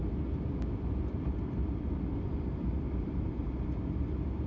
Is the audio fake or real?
real